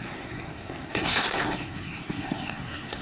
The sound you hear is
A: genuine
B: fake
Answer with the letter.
B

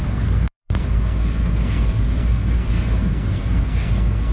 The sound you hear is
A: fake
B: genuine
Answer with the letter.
A